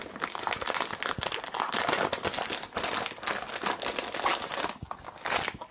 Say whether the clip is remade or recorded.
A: recorded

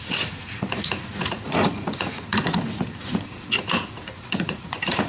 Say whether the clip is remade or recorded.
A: remade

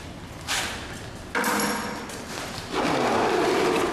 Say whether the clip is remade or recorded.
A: recorded